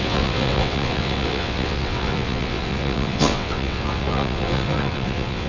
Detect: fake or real fake